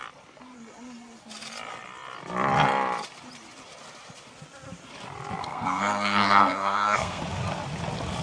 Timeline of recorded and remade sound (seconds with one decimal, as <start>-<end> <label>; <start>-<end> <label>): 0.0-5.4 recorded; 5.4-7.2 remade; 7.2-8.2 recorded